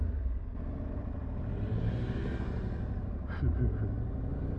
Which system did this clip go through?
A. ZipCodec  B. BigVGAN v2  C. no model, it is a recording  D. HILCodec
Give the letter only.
C